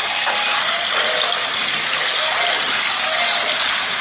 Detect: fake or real real